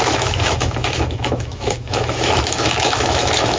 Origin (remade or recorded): remade